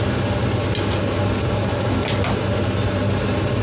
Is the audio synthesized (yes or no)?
no